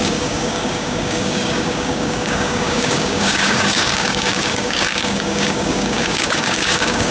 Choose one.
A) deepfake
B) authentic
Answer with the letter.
A